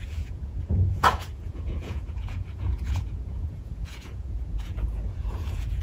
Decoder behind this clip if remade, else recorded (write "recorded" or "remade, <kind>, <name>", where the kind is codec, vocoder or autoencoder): remade, vocoder, Vocos